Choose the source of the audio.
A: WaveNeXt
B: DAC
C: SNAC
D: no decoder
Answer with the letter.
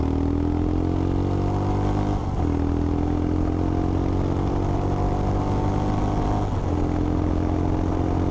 D